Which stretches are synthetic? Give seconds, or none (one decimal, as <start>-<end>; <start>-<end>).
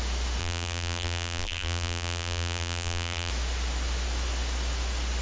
0.4-3.3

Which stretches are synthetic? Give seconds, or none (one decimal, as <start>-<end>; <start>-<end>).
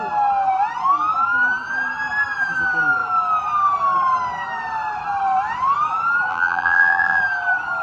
6.3-7.2